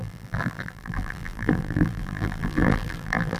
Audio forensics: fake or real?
fake